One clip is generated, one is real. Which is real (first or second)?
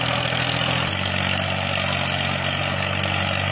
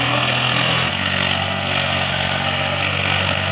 first